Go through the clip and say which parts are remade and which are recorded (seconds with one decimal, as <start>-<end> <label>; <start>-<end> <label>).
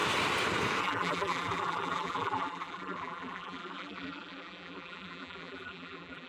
0.0-0.8 recorded; 0.8-6.3 remade